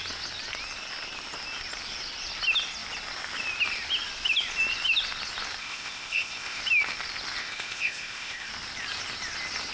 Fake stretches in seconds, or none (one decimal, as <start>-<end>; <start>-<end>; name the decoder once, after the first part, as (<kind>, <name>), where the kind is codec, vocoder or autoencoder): 5.6-6.6 (codec, ZipCodec); 7.4-8.5